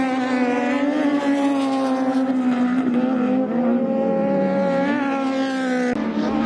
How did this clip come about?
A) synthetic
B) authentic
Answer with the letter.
B